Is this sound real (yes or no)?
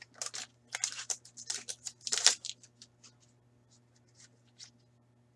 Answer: yes